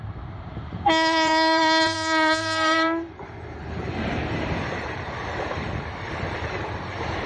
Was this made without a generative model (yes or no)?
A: no